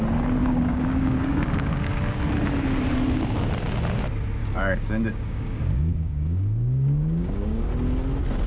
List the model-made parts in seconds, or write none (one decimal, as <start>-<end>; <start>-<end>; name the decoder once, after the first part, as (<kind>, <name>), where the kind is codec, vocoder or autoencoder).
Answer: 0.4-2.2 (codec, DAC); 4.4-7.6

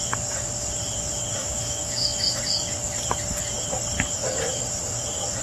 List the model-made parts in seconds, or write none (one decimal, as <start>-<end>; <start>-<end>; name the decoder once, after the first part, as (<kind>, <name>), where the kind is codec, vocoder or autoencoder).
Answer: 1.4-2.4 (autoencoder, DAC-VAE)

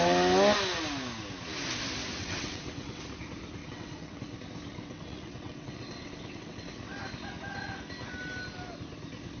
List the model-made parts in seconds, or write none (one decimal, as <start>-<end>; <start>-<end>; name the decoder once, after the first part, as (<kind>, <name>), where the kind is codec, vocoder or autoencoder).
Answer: 2.2-3.0 (vocoder, WaveNeXt); 3.6-4.2; 4.7-6.7

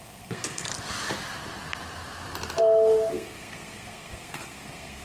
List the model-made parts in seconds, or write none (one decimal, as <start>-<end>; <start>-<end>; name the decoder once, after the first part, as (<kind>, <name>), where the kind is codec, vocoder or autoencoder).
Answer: 0.0-0.7 (codec, SNAC); 3.1-5.0

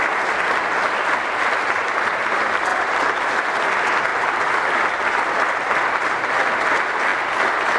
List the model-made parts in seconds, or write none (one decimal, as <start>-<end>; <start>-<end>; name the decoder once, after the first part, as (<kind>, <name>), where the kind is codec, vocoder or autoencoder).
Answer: 2.7-3.3 (vocoder, BigVGAN v2); 4.1-5.9

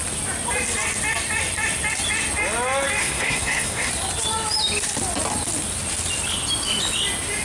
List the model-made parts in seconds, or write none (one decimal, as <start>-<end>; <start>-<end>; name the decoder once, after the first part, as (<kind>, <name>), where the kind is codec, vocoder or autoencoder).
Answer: 3.0-3.9 (codec, SNAC)

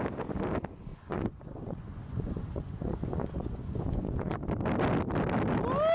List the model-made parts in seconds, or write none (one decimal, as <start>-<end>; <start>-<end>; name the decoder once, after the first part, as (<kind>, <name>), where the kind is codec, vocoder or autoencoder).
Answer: 0.9-4.4 (vocoder, Vocos)